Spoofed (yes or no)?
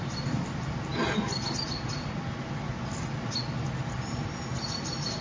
no